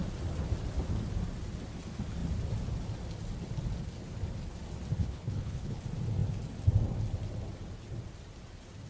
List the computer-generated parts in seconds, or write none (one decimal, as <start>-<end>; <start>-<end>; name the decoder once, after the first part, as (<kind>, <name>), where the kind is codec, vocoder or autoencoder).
5.0-5.8 (codec, HILCodec)

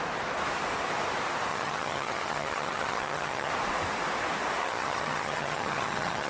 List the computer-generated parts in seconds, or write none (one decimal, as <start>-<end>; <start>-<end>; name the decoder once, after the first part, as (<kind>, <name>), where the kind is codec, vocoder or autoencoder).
1.5-3.5 (vocoder, HiFi-GAN); 4.6-6.3

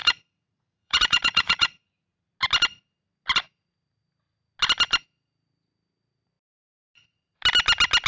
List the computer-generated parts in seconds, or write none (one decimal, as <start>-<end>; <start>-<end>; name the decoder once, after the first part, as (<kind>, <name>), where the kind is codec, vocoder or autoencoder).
0.0-2.3 (vocoder, Vocos)

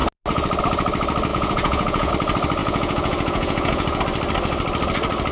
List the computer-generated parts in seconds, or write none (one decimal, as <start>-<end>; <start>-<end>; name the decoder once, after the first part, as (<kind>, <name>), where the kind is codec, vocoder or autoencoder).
1.3-2.1 (vocoder, Vocos); 2.6-4.0

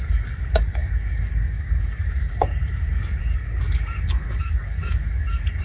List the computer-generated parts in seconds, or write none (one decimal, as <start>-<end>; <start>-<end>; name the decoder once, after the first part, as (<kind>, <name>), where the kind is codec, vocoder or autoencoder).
0.0-5.6 (codec, DAC)

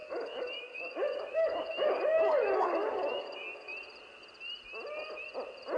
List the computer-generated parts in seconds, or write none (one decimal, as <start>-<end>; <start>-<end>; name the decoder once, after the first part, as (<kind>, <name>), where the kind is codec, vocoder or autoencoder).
0.0-3.7 (codec, DAC)

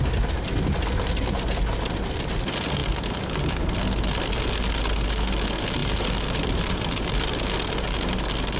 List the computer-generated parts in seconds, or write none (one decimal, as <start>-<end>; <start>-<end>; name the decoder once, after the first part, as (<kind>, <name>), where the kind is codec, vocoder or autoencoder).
none

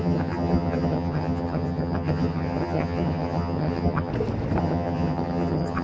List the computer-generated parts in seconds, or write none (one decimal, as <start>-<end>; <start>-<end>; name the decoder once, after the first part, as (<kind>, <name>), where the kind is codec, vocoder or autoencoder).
0.0-4.1 (vocoder, HiFi-GAN); 4.6-5.8